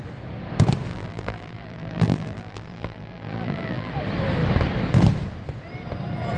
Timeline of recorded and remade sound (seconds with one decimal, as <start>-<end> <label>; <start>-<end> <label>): 0.0-0.9 recorded; 0.9-3.9 remade; 3.9-6.4 recorded